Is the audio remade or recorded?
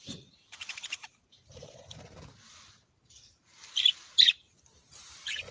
remade